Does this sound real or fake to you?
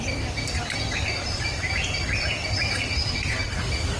fake